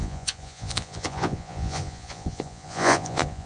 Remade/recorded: remade